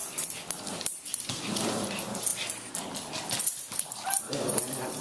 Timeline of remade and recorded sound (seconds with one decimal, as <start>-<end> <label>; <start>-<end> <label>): 0.0-5.0 recorded